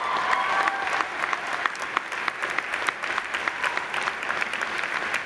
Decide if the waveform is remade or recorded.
recorded